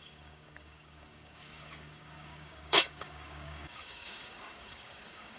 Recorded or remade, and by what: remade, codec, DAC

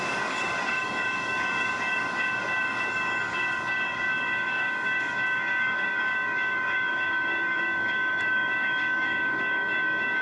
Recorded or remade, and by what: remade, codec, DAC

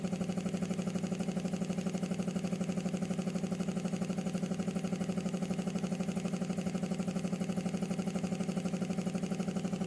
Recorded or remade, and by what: recorded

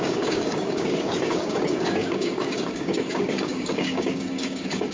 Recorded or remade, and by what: remade, codec, DAC